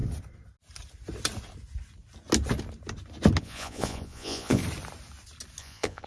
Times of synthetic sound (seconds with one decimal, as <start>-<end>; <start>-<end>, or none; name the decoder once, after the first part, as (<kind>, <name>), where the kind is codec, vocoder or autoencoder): 3.4-4.6 (vocoder, Vocos); 5.6-6.1